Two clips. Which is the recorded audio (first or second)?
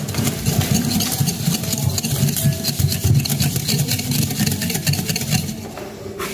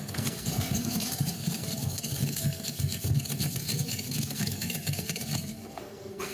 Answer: first